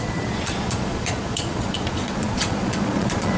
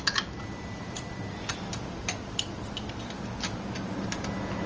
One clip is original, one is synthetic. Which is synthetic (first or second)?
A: first